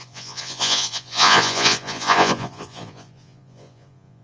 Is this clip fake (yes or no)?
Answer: yes